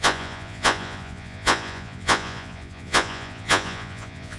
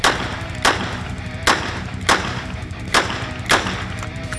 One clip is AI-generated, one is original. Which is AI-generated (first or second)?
first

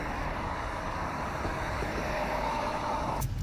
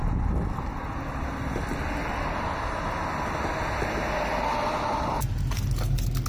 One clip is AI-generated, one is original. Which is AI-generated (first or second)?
first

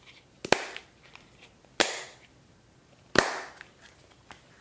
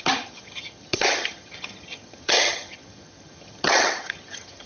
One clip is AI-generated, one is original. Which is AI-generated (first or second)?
second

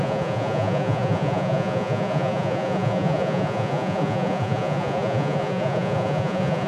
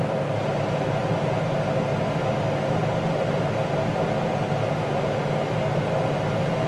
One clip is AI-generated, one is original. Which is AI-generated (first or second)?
first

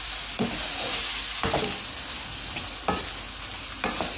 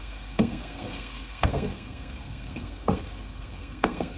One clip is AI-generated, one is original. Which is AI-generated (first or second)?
second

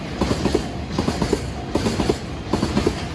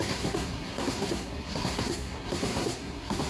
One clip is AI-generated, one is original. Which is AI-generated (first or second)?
second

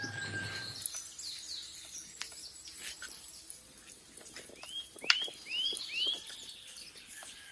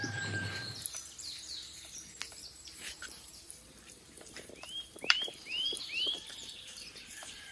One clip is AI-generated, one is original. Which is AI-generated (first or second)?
second